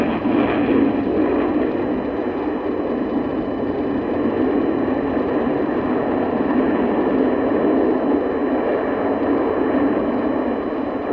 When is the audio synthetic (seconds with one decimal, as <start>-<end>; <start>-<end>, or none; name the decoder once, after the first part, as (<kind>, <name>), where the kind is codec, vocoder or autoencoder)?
none